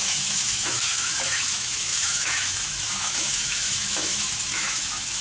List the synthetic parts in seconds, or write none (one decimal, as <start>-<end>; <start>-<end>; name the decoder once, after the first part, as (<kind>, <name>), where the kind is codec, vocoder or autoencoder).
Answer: 0.0-5.2 (autoencoder, DAC-VAE)